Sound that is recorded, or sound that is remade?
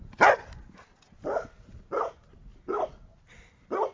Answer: recorded